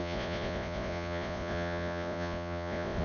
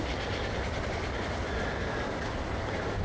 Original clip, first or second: second